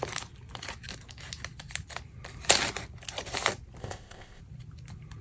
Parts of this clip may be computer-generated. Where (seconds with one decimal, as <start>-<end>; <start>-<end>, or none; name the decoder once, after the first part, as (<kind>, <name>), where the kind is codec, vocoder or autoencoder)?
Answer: 3.8-4.4 (codec, ZipCodec)